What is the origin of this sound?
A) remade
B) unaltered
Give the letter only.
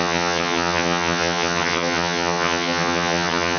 A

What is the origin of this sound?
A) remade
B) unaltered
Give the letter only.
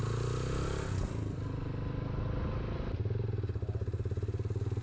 B